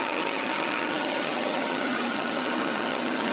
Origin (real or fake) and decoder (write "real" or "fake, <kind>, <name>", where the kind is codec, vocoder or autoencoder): fake, vocoder, HiFi-GAN